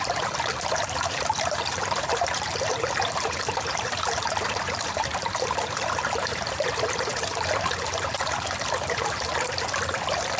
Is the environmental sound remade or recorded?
remade